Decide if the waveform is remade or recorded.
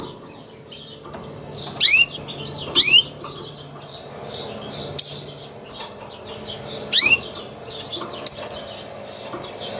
recorded